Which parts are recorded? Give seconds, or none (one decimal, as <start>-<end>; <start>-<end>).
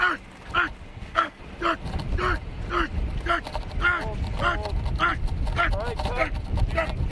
0.0-0.9; 1.4-7.1